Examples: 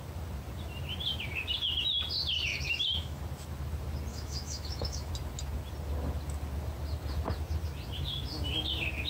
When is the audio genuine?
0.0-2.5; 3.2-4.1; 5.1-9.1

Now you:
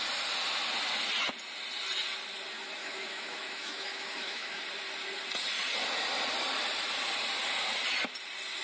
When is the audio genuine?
0.0-2.8; 4.6-8.6

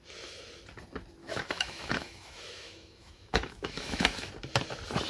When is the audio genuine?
0.0-1.2; 4.3-5.1

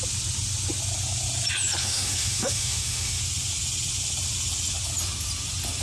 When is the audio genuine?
0.0-1.8; 3.2-5.8

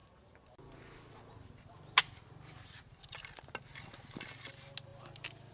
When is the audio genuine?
0.0-5.5

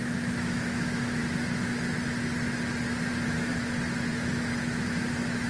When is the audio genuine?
1.2-3.1; 3.5-4.1

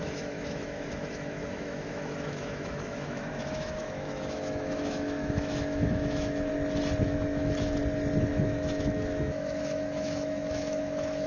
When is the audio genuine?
6.5-7.0; 7.8-8.3

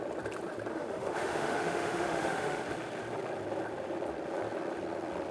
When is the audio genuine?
0.0-0.7; 2.6-5.3